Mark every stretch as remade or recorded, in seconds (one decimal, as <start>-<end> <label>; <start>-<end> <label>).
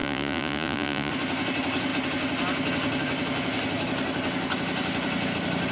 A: 0.0-1.1 remade; 1.1-5.7 recorded